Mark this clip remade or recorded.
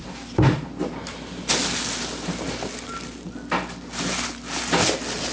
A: recorded